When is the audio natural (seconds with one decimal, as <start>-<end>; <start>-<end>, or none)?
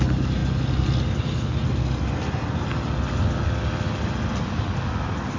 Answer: 0.0-5.4